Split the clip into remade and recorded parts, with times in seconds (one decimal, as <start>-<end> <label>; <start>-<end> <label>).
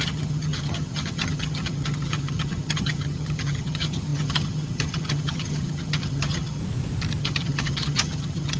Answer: 0.0-6.6 remade; 6.6-7.2 recorded; 7.2-8.6 remade